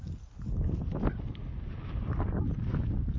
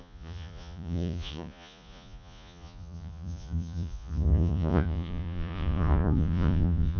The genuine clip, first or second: first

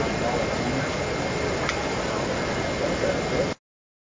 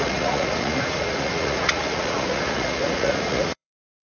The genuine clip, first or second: first